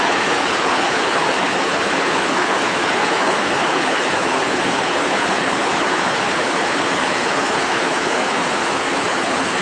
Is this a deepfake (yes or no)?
yes